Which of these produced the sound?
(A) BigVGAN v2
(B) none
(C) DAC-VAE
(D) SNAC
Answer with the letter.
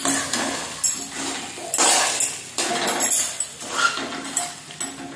B